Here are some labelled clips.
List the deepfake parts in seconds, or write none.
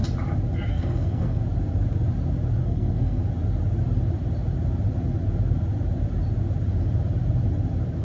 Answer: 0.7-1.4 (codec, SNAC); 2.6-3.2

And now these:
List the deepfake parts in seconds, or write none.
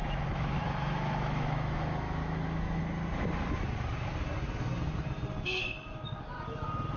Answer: 0.0-2.8 (autoencoder, DAC-VAE)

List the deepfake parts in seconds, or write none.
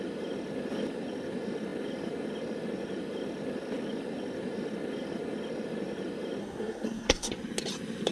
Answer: 6.4-7.3 (codec, SNAC)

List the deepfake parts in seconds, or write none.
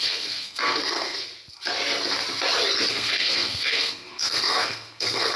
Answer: 0.0-1.3 (codec, SNAC); 2.9-5.4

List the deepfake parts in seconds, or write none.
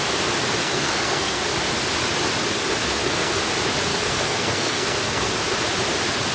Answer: 0.6-1.4 (codec, SNAC); 2.8-3.4; 3.9-5.3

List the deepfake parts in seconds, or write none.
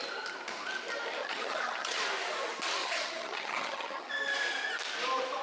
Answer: 1.2-2.0 (vocoder, HiFi-GAN); 2.8-4.1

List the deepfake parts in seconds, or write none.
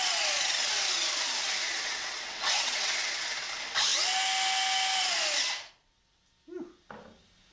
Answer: 1.7-2.9 (vocoder, WaveNeXt)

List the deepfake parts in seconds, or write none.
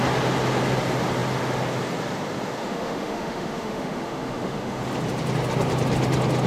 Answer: 2.6-4.8 (autoencoder, DAC-VAE)